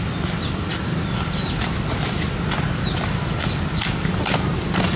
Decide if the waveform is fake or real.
real